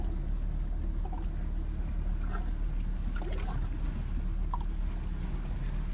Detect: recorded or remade recorded